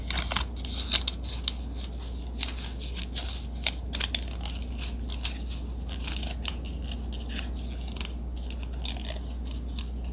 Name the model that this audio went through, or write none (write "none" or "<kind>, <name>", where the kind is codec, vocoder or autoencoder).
none